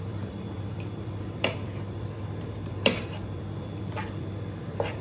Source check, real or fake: fake